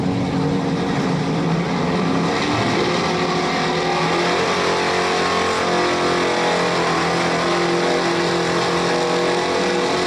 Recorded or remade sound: recorded